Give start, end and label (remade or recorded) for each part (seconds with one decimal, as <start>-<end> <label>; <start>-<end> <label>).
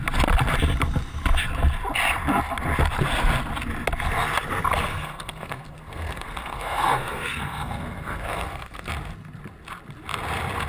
0.0-4.9 recorded; 4.9-8.9 remade; 8.9-10.7 recorded